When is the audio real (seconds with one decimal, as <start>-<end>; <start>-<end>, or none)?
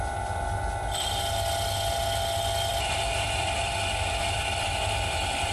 0.0-2.7; 4.7-5.5